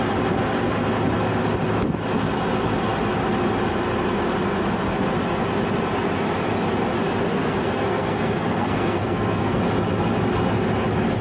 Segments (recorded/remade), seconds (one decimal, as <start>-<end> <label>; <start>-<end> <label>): 0.0-7.3 recorded; 7.3-9.6 remade; 9.6-11.2 recorded